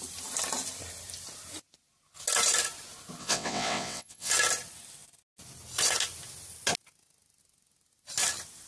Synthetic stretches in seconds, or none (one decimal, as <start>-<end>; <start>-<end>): 3.2-4.3